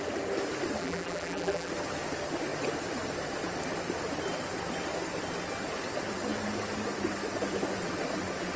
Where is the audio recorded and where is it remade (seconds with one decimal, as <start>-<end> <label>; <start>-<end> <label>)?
0.0-0.8 recorded; 0.8-1.7 remade; 1.7-8.6 recorded